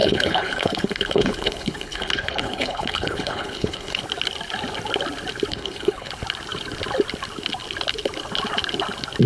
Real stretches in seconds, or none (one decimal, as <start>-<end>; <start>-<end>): 4.0-5.5; 6.1-9.3

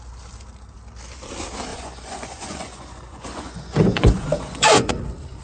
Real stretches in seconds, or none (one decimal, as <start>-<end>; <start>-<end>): 0.0-1.7; 4.9-5.4